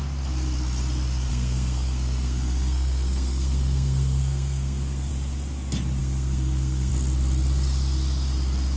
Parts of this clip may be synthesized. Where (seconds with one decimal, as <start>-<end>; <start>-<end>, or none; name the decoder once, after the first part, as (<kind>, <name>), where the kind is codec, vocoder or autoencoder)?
1.3-5.1 (codec, SNAC); 6.0-6.9